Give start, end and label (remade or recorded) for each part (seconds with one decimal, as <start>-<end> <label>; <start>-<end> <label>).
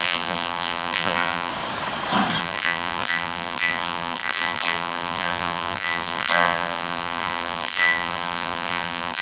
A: 0.0-1.5 remade; 1.5-2.4 recorded; 2.4-9.2 remade